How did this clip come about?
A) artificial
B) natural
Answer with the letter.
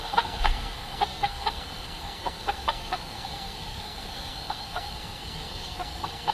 A